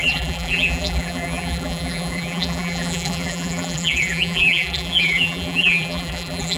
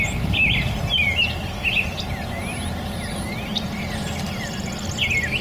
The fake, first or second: first